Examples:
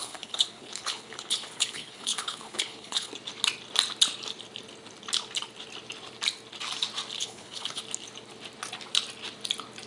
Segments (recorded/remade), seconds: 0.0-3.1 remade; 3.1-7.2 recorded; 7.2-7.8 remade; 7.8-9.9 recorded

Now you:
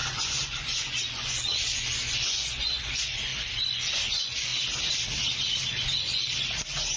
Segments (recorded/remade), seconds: 0.0-4.5 remade; 4.5-5.7 recorded; 5.7-7.0 remade

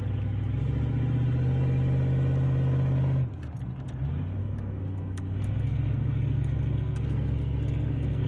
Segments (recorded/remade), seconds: 0.0-4.4 recorded; 4.4-8.3 remade

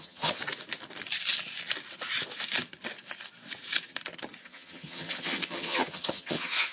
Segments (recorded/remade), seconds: 0.0-0.4 remade; 0.4-4.4 recorded; 4.4-6.7 remade

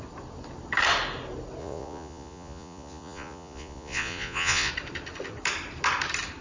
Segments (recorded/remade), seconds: 0.0-1.6 recorded; 1.6-4.7 remade; 4.7-6.4 recorded

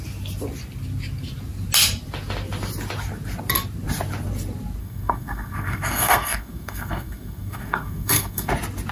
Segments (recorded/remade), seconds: 0.0-4.8 recorded; 4.8-8.5 remade; 8.5-8.9 recorded